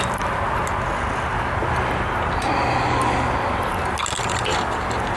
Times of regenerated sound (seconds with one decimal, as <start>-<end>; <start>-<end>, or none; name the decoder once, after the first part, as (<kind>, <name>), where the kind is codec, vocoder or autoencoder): none